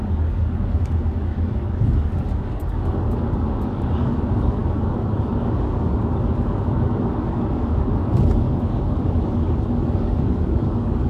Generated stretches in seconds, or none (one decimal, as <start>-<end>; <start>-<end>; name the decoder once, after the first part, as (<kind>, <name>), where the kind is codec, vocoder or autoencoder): 0.0-11.1 (codec, DAC)